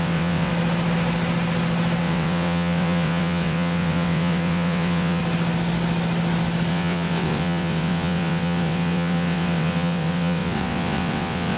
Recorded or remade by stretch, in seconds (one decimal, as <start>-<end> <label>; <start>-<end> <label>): 0.0-0.5 remade; 0.5-2.0 recorded; 2.0-5.2 remade; 5.2-6.7 recorded; 6.7-11.6 remade